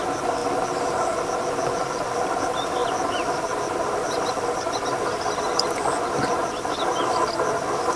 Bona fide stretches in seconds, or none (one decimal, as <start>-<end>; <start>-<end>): 0.0-8.0